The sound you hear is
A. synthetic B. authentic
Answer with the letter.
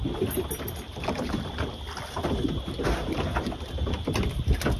B